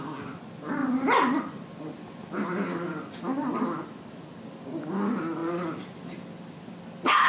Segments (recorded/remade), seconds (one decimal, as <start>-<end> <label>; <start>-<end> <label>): 0.0-0.8 recorded; 0.8-3.2 remade; 3.2-5.4 recorded; 5.4-7.3 remade